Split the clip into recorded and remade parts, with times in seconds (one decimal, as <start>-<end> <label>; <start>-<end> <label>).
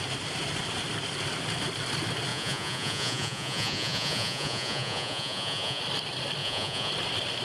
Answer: 0.0-2.3 recorded; 2.3-5.8 remade; 5.8-6.4 recorded; 6.4-6.9 remade; 6.9-7.4 recorded